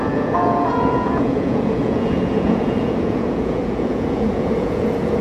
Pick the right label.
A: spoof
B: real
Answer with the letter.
A